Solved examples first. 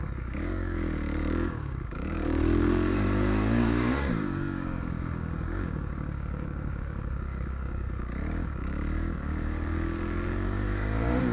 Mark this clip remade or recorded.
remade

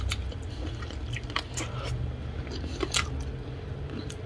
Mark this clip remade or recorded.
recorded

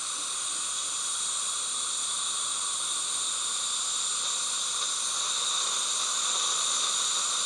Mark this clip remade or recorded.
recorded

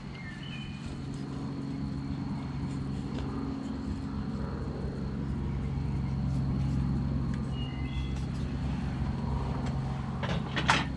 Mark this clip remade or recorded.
recorded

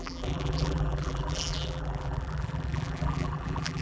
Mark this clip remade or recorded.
remade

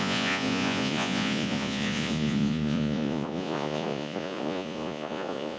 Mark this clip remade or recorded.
remade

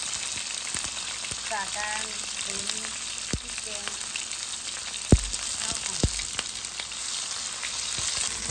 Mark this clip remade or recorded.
recorded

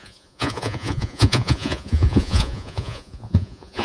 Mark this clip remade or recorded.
remade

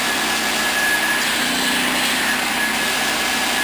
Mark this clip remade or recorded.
recorded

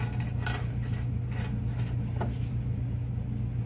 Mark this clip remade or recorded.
recorded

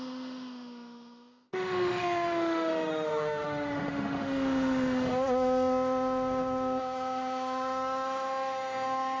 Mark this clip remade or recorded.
remade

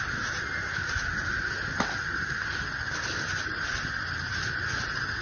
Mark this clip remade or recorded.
recorded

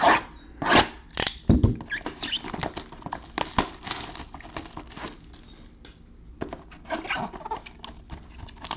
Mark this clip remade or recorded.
recorded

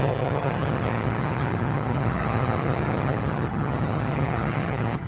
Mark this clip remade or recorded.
remade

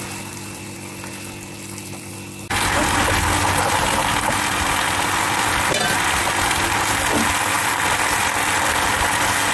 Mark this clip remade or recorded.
recorded